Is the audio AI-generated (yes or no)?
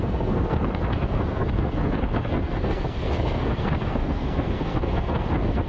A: yes